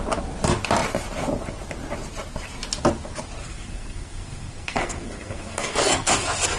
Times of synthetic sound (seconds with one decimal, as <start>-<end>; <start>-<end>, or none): 3.4-6.1